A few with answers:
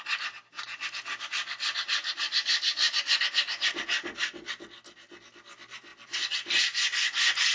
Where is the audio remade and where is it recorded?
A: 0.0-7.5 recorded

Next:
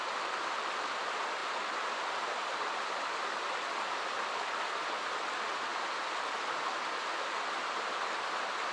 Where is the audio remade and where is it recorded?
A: 0.0-8.7 recorded

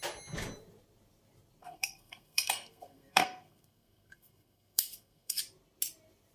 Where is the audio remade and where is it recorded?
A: 0.0-1.6 recorded; 1.6-5.4 remade; 5.4-6.3 recorded

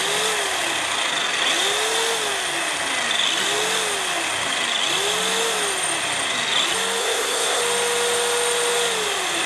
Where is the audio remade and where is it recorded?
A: 0.0-7.0 recorded; 7.0-7.6 remade; 7.6-9.5 recorded

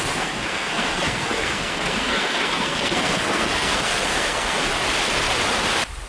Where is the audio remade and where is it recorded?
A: 0.0-4.7 remade; 4.7-6.1 recorded

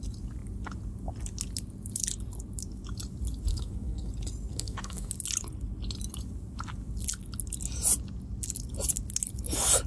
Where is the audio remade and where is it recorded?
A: 0.0-3.5 recorded; 3.5-4.1 remade; 4.1-4.5 recorded; 4.5-5.1 remade; 5.1-9.9 recorded